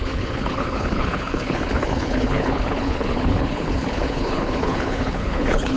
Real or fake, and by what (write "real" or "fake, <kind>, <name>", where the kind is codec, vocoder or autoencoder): fake, codec, HILCodec